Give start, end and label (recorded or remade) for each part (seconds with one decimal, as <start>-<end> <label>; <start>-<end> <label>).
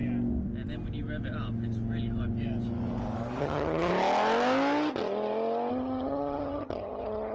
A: 0.0-3.4 recorded; 3.4-3.9 remade; 3.9-5.7 recorded; 5.7-7.3 remade